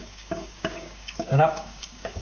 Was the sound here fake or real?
fake